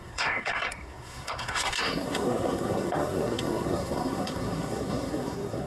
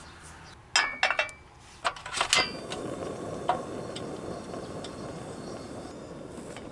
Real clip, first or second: second